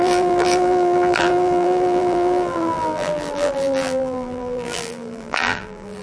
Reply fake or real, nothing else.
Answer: fake